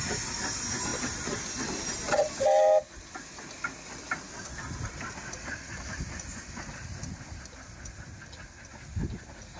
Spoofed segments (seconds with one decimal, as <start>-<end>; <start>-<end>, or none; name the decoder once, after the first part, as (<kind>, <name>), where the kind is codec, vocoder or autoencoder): none